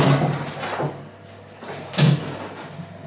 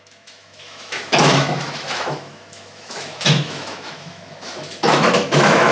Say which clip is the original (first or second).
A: first